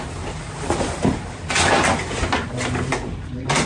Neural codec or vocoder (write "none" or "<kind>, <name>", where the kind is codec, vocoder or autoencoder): none